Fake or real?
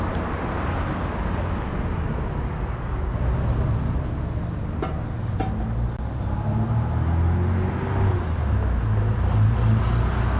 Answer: real